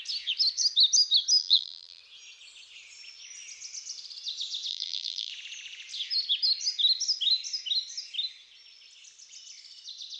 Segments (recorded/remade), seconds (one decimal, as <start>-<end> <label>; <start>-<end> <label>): 0.0-1.4 recorded; 1.4-2.0 remade; 2.0-4.7 recorded; 4.7-5.3 remade; 5.3-10.2 recorded